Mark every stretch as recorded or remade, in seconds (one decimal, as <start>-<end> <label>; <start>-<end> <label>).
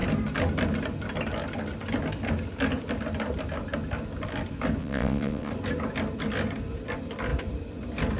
0.0-4.8 recorded; 4.8-5.5 remade; 5.5-8.2 recorded